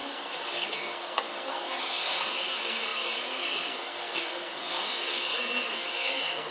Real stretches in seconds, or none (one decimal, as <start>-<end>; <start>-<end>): none